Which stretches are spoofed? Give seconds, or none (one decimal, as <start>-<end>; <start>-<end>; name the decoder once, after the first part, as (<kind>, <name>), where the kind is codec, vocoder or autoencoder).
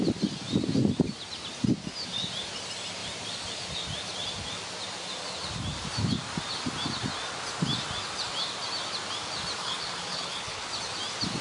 9.6-10.7 (codec, HILCodec)